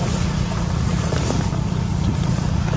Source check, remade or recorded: remade